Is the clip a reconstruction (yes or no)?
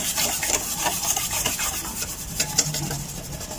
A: no